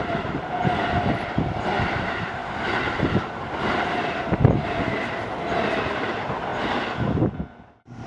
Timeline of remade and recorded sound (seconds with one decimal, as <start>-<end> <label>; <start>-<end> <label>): 0.0-2.4 remade; 2.4-3.1 recorded; 3.1-8.1 remade